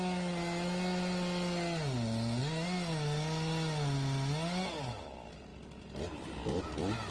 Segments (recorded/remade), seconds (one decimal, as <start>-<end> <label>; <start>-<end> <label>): 0.0-7.1 recorded